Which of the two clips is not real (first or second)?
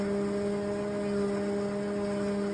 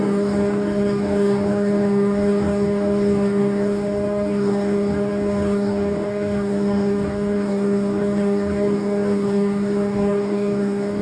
second